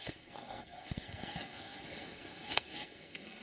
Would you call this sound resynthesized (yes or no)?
yes